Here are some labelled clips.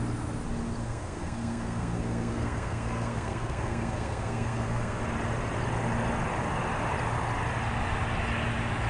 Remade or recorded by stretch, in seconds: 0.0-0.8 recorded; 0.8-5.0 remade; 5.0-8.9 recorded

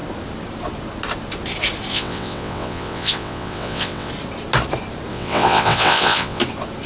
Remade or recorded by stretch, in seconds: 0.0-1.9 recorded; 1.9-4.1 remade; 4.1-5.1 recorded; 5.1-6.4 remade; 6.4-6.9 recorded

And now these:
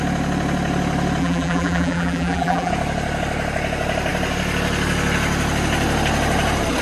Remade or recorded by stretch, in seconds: 0.0-1.2 recorded; 1.2-2.7 remade; 2.7-6.8 recorded

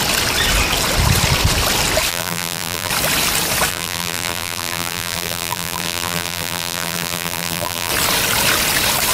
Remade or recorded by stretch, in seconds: 0.0-2.1 recorded; 2.1-2.9 remade; 2.9-3.7 recorded; 3.7-7.9 remade; 7.9-9.1 recorded

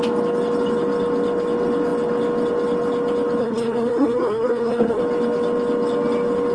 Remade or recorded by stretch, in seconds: 0.0-3.4 recorded; 3.4-5.0 remade; 5.0-6.5 recorded

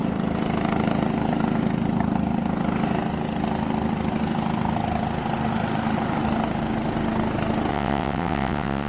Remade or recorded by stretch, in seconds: 0.0-7.7 recorded; 7.7-8.9 remade

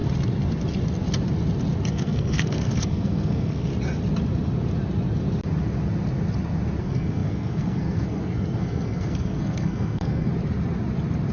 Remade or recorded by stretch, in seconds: 0.0-1.9 recorded; 1.9-3.7 remade; 3.7-6.8 recorded; 6.8-10.3 remade; 10.3-11.3 recorded

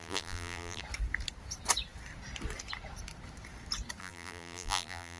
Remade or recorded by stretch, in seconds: 0.0-0.8 remade; 0.8-4.0 recorded; 4.0-5.2 remade